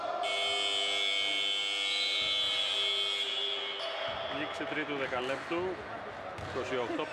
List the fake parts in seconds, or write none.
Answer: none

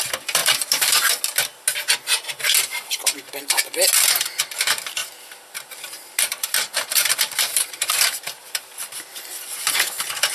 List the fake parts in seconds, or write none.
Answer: 0.4-1.2; 2.7-3.6; 5.0-9.7